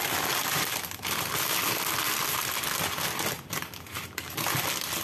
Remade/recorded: recorded